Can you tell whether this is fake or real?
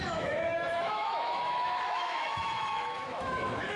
fake